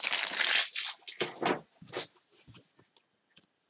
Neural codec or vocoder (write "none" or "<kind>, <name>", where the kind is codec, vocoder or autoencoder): none